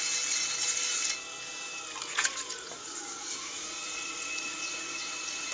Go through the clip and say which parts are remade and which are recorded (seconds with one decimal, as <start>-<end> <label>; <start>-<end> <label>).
0.0-2.1 recorded; 2.1-5.5 remade